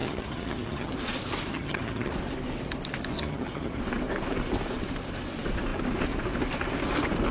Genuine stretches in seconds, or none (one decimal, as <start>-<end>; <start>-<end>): 0.9-1.5; 2.1-3.1; 3.8-7.3